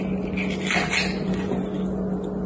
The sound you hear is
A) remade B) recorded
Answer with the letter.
B